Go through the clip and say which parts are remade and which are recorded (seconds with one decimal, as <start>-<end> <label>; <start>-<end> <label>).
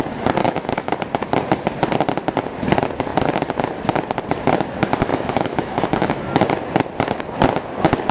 0.0-0.4 recorded; 0.4-0.9 remade; 0.9-5.1 recorded; 5.1-6.2 remade; 6.2-8.1 recorded